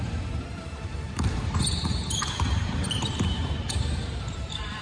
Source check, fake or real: fake